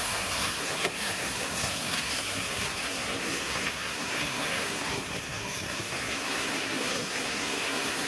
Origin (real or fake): fake